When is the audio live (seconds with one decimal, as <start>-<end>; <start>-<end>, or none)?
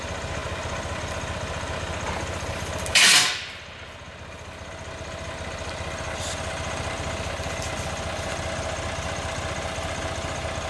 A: 0.0-10.7